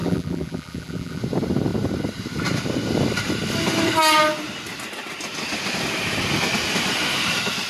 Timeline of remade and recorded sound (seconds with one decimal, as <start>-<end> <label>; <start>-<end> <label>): 0.0-1.2 remade; 1.2-7.7 recorded